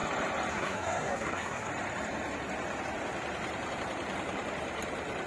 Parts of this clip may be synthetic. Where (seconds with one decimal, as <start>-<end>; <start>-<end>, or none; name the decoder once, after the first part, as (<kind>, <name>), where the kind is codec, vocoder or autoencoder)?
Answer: 0.5-1.7 (codec, SNAC)